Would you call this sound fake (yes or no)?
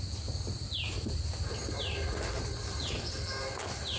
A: no